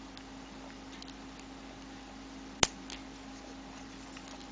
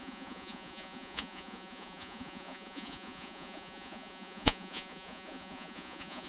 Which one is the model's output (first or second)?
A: second